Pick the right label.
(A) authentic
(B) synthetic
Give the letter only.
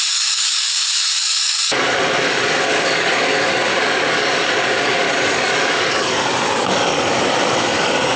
B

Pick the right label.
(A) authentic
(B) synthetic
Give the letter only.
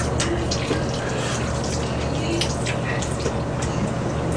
A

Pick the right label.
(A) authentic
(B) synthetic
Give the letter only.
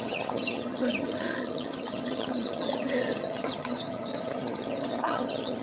B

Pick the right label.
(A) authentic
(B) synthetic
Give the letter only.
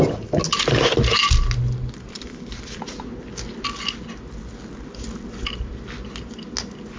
A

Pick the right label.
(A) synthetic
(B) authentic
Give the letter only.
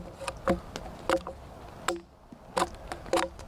B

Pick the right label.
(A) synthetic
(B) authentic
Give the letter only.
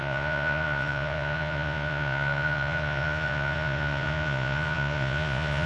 A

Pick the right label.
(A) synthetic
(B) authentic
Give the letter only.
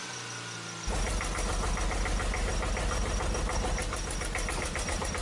B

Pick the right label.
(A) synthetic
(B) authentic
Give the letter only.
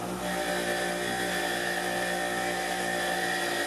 B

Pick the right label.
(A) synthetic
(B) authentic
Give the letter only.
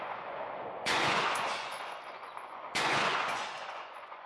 A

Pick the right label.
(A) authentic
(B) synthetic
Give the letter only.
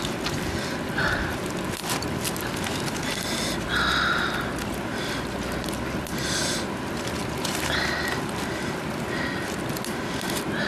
A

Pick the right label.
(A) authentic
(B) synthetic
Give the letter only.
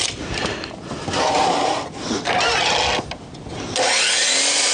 A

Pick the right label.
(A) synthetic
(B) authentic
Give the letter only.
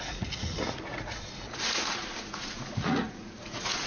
A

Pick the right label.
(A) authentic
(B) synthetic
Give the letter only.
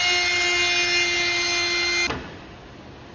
A